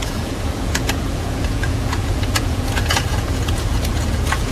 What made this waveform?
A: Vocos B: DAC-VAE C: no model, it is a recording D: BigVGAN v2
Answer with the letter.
A